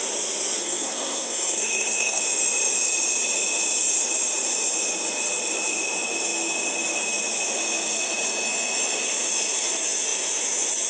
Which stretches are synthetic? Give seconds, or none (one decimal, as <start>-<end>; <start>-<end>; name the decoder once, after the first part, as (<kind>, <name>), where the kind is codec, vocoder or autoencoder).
0.6-2.2 (codec, SNAC)